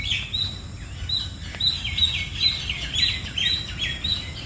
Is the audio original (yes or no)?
yes